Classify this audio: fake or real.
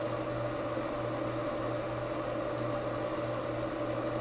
real